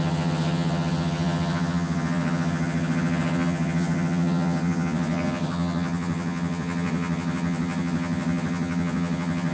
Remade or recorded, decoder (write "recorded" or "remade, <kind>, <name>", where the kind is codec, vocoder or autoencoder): remade, vocoder, HiFi-GAN